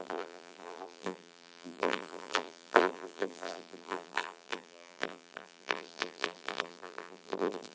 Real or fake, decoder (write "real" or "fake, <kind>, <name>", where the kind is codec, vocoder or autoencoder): fake, vocoder, BigVGAN v2